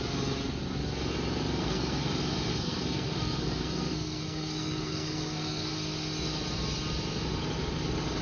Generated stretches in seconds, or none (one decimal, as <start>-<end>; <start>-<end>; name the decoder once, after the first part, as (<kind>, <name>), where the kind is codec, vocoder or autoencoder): 1.6-2.1 (codec, SNAC); 2.5-5.7